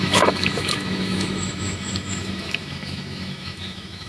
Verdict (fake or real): fake